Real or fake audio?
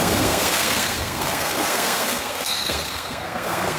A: fake